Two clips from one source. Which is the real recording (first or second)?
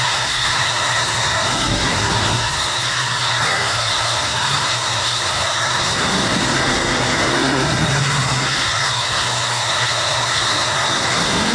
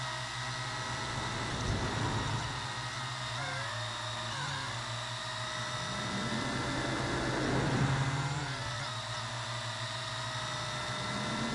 second